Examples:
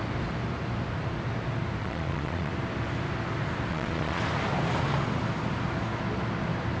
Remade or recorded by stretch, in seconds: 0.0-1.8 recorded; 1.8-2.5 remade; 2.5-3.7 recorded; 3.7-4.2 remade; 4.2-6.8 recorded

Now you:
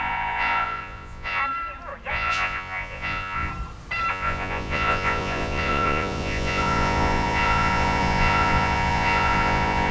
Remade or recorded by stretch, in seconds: 0.0-1.4 remade; 1.4-2.1 recorded; 2.1-3.5 remade; 3.5-4.1 recorded; 4.1-9.9 remade

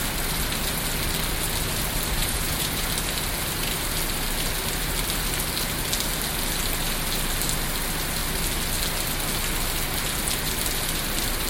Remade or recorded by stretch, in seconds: 0.0-2.2 recorded; 2.2-2.9 remade; 2.9-11.5 recorded

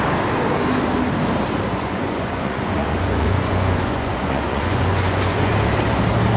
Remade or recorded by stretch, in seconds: 0.0-1.7 recorded; 1.7-5.5 remade; 5.5-6.4 recorded

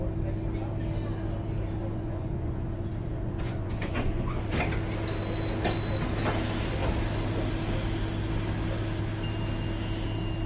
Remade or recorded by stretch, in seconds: 0.0-1.8 recorded; 1.8-4.4 remade; 4.4-10.5 recorded

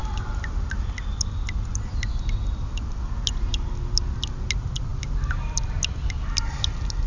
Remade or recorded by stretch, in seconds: 0.0-7.1 recorded

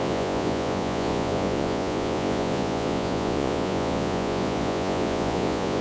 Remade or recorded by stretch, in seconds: 0.0-5.8 remade